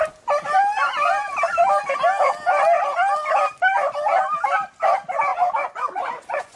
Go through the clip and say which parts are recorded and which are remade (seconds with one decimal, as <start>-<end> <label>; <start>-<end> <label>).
0.0-5.3 recorded; 5.3-6.6 remade